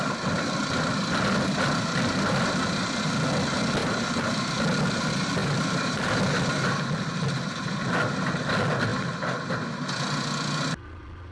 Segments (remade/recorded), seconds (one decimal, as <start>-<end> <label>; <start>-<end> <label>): 0.0-3.8 recorded; 3.8-4.3 remade; 4.3-5.4 recorded; 5.4-6.1 remade; 6.1-8.9 recorded; 8.9-9.5 remade; 9.5-11.3 recorded